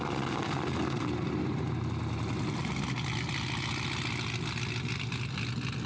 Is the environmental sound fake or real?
real